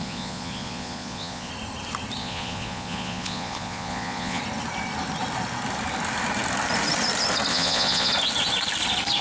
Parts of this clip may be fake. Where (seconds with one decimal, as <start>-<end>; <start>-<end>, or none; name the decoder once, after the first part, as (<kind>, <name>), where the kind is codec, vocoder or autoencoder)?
0.0-1.5 (vocoder, Vocos); 2.2-4.4; 7.5-8.1